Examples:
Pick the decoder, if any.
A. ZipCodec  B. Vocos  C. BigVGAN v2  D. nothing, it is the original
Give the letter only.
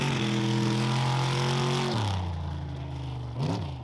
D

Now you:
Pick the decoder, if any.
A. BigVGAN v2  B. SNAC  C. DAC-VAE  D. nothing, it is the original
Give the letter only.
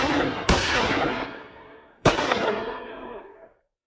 B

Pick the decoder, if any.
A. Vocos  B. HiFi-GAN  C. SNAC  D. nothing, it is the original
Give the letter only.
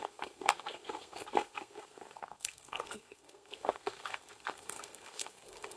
C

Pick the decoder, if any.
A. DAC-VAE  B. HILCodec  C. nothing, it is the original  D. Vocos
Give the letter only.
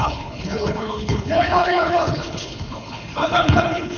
B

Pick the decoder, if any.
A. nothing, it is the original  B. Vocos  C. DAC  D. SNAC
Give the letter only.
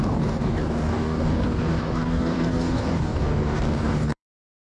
C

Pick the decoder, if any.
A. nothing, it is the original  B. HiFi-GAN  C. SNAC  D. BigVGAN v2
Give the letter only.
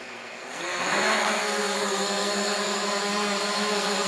C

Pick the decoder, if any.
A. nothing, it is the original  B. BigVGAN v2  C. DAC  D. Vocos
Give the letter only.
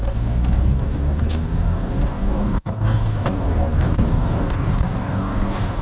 C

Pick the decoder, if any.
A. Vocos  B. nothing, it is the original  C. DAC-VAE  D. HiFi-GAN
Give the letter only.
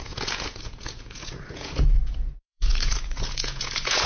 A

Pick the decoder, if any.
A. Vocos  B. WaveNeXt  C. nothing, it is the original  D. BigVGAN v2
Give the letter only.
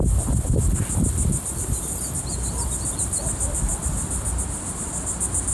C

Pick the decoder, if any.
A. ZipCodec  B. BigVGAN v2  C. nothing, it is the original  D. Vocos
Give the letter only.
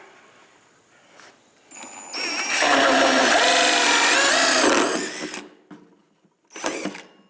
C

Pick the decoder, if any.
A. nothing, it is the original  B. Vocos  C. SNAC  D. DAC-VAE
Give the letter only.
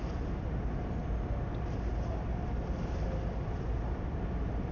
A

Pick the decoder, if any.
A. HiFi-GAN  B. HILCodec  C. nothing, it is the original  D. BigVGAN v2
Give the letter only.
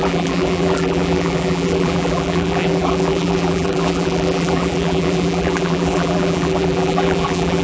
D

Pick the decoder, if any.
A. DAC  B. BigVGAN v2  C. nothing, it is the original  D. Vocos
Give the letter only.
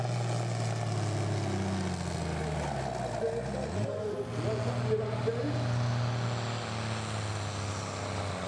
C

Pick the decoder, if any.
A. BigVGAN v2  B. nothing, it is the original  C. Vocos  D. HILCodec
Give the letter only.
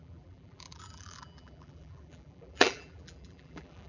A